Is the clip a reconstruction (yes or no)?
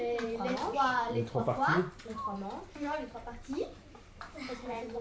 yes